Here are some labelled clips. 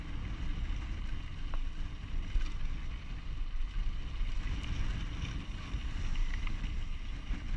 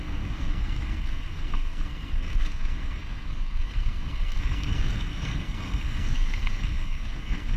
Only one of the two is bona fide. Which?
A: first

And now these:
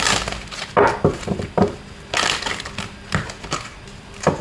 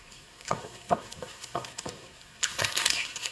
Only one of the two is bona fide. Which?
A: first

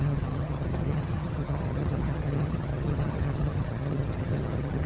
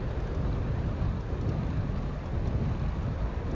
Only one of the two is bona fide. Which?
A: second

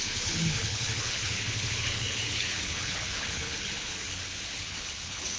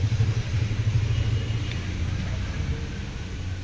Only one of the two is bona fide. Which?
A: second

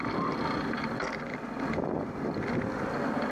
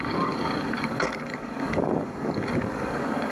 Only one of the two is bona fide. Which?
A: first